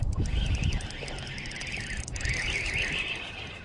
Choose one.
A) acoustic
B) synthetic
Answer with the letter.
A